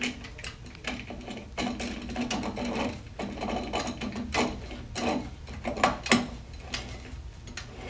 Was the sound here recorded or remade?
recorded